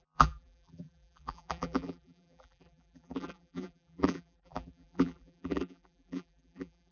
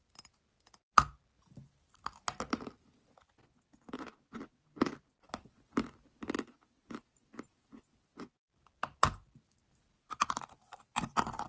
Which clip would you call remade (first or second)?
first